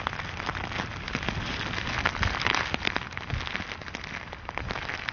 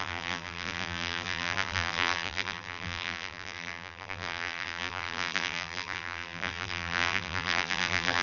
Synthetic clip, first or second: second